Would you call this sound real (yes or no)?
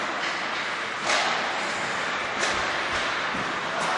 yes